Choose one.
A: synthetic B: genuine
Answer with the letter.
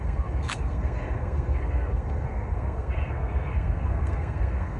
A